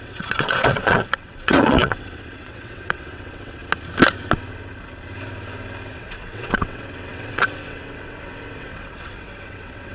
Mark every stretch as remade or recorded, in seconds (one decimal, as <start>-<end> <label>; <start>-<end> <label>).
0.0-3.6 remade; 3.6-5.9 recorded; 5.9-9.9 remade